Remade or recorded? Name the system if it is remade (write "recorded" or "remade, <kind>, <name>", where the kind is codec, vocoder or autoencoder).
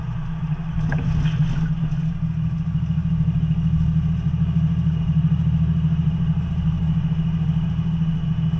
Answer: recorded